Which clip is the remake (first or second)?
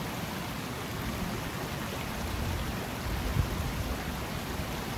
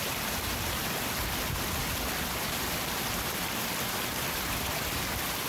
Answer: second